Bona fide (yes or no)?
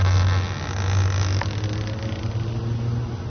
yes